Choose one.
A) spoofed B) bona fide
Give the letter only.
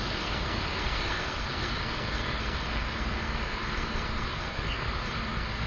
A